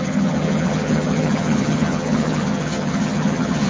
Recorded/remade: remade